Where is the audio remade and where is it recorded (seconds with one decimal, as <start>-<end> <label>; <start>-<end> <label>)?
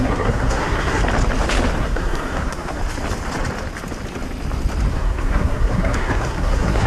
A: 0.0-1.0 remade; 1.0-1.8 recorded; 1.8-2.8 remade; 2.8-4.9 recorded; 4.9-6.9 remade